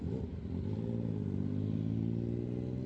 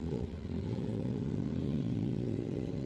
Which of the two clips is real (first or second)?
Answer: first